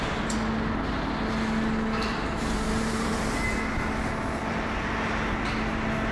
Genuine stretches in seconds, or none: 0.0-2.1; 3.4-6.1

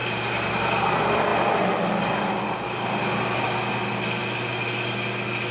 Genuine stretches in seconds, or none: 0.6-5.5